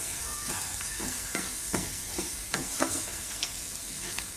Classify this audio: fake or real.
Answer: fake